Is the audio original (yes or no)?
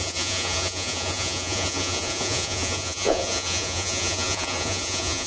no